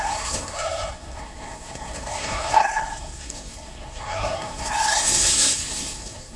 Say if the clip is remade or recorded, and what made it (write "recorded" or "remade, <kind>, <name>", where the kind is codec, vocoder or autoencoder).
remade, codec, SNAC